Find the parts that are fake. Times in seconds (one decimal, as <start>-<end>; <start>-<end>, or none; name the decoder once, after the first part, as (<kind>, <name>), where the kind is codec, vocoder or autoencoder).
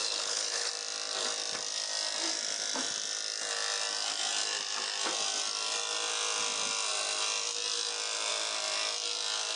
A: 0.0-0.7 (codec, HILCodec)